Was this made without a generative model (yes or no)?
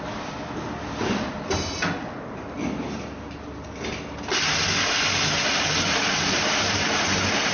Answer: yes